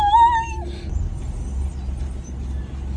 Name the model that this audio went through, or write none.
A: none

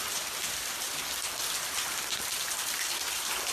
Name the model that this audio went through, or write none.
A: none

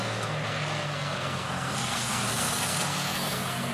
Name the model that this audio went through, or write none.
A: codec, SNAC